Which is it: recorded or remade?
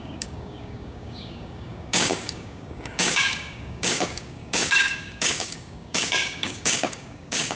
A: remade